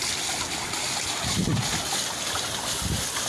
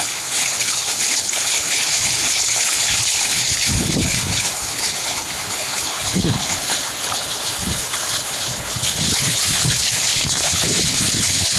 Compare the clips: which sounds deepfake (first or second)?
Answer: second